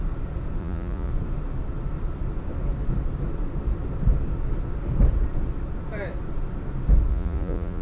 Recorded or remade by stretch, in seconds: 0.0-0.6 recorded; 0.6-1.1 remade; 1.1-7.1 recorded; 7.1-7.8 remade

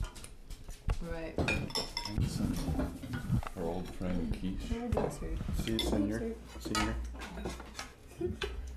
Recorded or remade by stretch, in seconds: 0.0-8.0 recorded; 8.0-8.8 remade

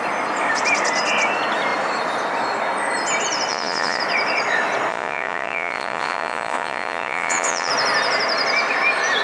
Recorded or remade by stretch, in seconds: 0.0-3.5 recorded; 3.5-4.0 remade; 4.0-4.9 recorded; 4.9-7.7 remade; 7.7-9.2 recorded

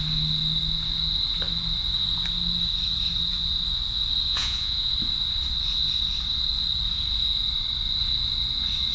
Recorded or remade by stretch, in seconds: 0.0-4.3 recorded; 4.3-4.9 remade; 4.9-8.9 recorded

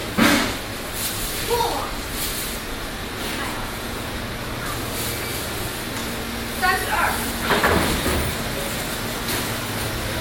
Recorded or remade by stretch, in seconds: 0.0-3.3 recorded; 3.3-4.3 remade; 4.3-10.2 recorded

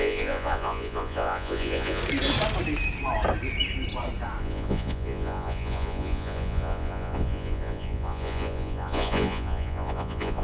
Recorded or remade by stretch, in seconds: 0.0-2.0 remade; 2.0-4.4 recorded; 4.4-10.4 remade

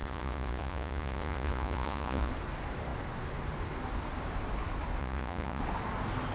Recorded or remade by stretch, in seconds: 0.0-2.3 remade; 2.3-5.0 recorded; 5.0-5.6 remade; 5.6-6.3 recorded

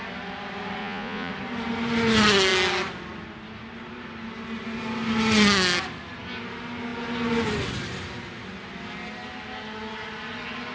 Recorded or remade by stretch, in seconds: 0.0-0.8 recorded; 0.8-1.3 remade; 1.3-10.7 recorded